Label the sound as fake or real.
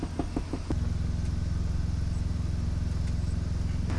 real